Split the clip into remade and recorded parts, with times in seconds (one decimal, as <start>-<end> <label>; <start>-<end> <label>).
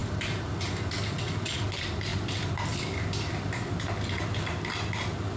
0.0-5.4 recorded